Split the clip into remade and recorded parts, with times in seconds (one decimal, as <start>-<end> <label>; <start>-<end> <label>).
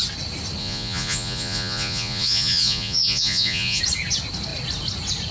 0.0-0.6 recorded; 0.6-3.8 remade; 3.8-5.3 recorded